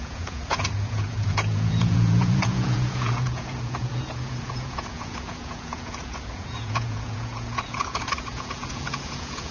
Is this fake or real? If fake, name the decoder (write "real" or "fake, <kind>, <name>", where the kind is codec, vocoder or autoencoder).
fake, vocoder, Vocos